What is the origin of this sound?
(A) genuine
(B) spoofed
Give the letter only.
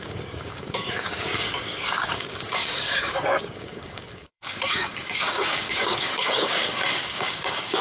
B